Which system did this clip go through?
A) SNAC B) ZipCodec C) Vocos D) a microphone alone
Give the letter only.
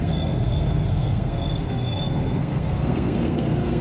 A